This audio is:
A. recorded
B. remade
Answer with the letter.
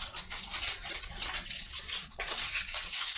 B